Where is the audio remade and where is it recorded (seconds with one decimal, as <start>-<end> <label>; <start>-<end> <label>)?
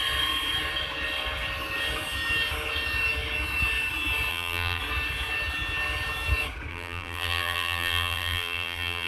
0.0-4.3 recorded; 4.3-4.8 remade; 4.8-6.7 recorded; 6.7-9.1 remade